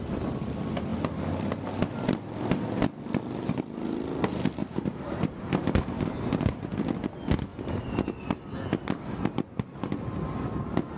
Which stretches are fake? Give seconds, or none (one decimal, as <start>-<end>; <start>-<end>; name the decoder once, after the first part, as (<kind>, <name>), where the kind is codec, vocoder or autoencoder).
4.6-5.7 (vocoder, BigVGAN v2)